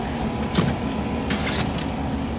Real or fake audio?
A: real